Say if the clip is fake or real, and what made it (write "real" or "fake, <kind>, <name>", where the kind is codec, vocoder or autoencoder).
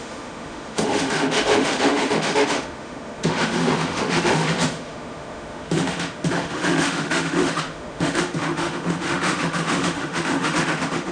fake, autoencoder, DAC-VAE